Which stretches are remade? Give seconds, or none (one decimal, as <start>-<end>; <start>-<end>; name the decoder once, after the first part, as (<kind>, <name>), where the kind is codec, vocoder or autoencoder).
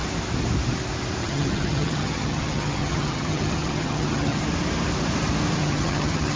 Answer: 1.2-4.4 (vocoder, HiFi-GAN); 5.6-6.4